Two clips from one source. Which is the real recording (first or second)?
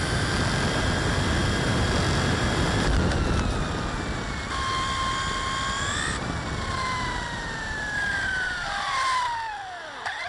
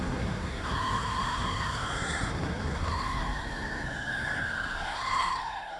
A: first